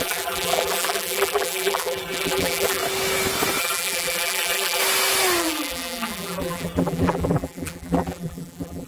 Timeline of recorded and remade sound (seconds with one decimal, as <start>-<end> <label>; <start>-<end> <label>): 0.0-2.8 remade; 2.8-3.6 recorded; 3.6-4.8 remade; 4.8-5.4 recorded; 5.4-8.9 remade